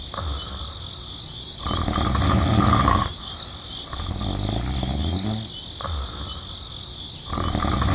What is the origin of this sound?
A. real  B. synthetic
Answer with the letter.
A